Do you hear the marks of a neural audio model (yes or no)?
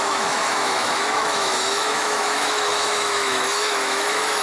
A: yes